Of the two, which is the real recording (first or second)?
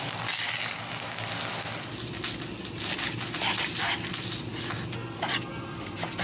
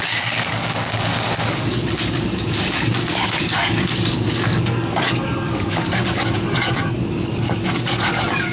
first